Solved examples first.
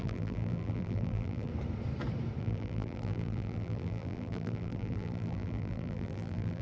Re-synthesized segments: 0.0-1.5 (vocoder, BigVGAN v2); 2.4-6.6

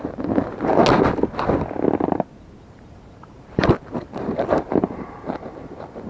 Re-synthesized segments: 0.0-0.7 (vocoder, BigVGAN v2); 2.6-6.1

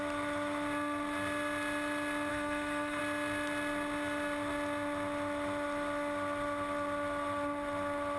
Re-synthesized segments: 2.3-3.0 (autoencoder, DAC-VAE)

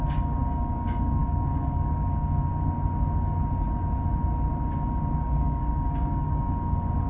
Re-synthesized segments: 0.0-2.5 (codec, DAC); 5.2-7.1

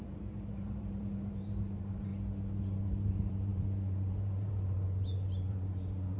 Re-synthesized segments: 0.0-2.1 (vocoder, BigVGAN v2); 2.6-6.2

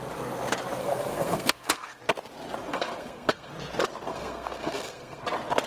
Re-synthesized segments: 0.8-2.0 (codec, SNAC); 2.7-3.5; 4.1-5.2